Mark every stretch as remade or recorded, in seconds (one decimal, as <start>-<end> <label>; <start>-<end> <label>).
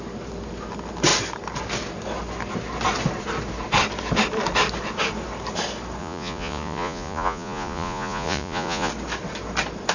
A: 0.0-6.0 recorded; 6.0-8.9 remade; 8.9-9.9 recorded